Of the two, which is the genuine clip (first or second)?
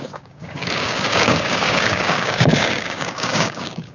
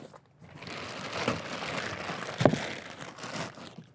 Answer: second